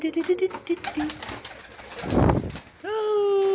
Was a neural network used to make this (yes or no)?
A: no